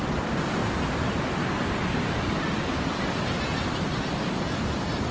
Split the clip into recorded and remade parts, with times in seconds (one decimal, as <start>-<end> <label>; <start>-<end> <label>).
0.0-5.1 recorded